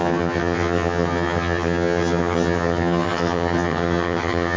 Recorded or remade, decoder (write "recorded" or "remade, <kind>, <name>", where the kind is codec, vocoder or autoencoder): remade, vocoder, HiFi-GAN